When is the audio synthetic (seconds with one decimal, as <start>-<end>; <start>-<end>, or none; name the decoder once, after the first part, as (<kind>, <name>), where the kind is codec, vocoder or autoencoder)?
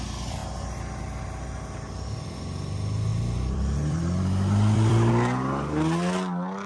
3.1-5.1 (vocoder, BigVGAN v2)